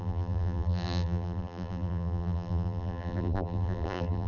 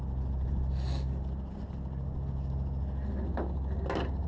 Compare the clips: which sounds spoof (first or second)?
first